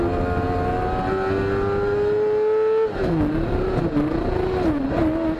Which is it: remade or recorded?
recorded